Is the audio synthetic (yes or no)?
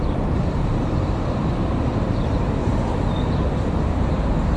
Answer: yes